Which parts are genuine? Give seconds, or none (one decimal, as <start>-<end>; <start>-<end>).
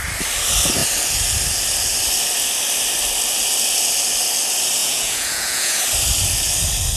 0.0-4.8; 5.8-7.0